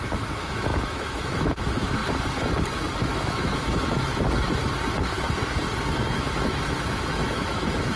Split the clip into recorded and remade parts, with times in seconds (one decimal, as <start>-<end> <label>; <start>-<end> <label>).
0.0-2.0 remade; 2.0-3.0 recorded; 3.0-4.1 remade; 4.1-6.1 recorded; 6.1-8.0 remade